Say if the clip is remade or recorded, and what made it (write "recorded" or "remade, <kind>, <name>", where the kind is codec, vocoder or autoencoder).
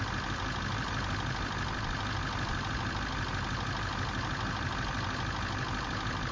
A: recorded